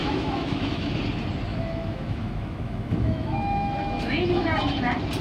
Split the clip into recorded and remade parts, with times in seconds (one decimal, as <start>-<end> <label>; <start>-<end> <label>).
0.0-1.0 remade; 1.0-1.5 recorded; 1.5-4.6 remade; 4.6-5.2 recorded